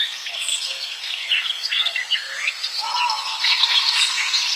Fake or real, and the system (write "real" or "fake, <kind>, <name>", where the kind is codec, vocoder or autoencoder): fake, codec, SNAC